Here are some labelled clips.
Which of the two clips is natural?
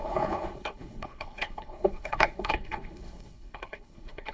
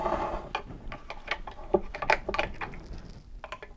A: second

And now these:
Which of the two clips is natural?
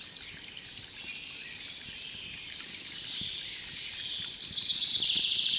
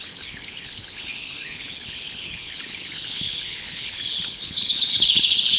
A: first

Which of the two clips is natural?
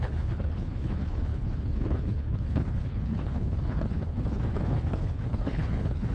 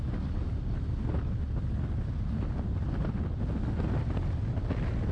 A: second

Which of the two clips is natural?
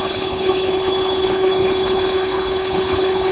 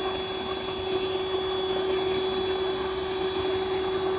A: second